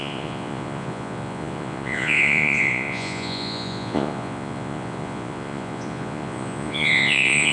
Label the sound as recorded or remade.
remade